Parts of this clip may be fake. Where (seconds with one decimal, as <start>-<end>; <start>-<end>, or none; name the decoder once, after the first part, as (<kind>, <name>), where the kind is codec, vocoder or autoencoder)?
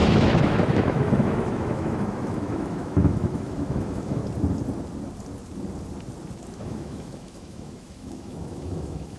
0.0-4.2 (autoencoder, DAC-VAE); 6.6-9.2